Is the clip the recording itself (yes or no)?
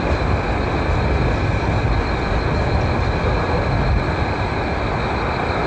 yes